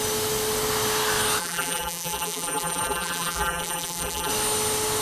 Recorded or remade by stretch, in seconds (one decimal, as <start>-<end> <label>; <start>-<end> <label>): 0.0-1.4 recorded; 1.4-4.3 remade; 4.3-5.0 recorded